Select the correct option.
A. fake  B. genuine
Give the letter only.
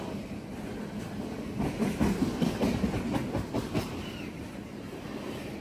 B